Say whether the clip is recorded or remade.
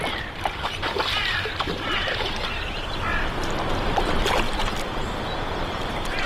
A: remade